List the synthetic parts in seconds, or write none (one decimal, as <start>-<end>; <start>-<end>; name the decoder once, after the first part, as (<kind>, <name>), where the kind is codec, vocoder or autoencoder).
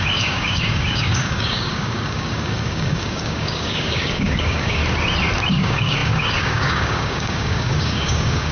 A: 0.0-4.8 (codec, DAC); 5.5-8.5